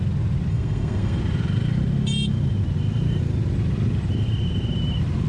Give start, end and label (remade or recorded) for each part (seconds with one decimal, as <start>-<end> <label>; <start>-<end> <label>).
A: 0.0-0.5 recorded; 0.5-1.2 remade; 1.2-5.3 recorded